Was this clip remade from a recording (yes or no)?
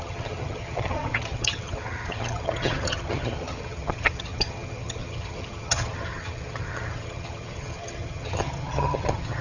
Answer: yes